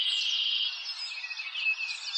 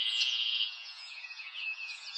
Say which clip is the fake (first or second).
second